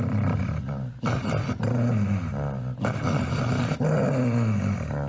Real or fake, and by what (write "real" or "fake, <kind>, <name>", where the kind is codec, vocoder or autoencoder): real